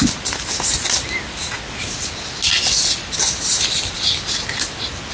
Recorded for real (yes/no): yes